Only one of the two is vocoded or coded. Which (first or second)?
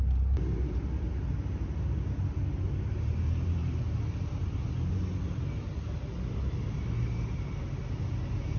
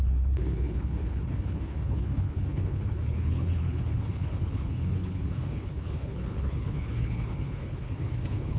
second